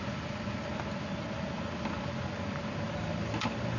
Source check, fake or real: real